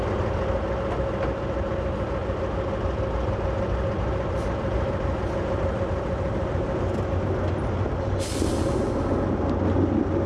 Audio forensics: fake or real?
real